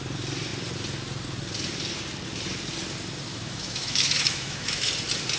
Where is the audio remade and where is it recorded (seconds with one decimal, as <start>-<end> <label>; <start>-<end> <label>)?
0.0-3.3 recorded; 3.3-4.9 remade; 4.9-5.4 recorded